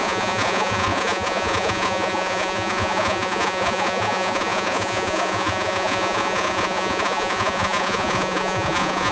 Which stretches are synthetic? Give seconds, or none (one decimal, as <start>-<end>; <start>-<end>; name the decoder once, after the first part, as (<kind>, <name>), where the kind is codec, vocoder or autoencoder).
0.0-9.1 (vocoder, Vocos)